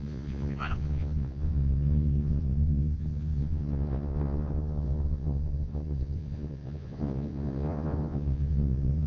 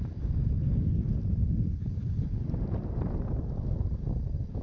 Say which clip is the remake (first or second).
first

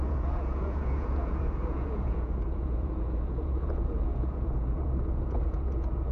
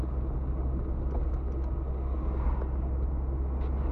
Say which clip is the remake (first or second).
first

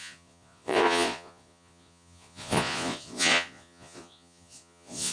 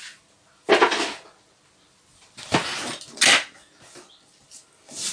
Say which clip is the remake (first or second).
first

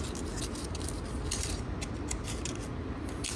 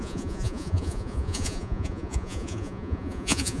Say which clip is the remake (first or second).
second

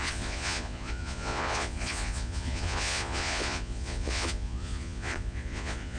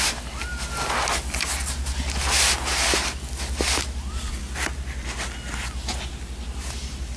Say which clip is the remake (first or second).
first